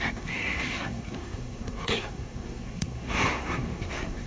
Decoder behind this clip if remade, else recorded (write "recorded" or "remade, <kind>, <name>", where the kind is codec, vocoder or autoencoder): remade, codec, SNAC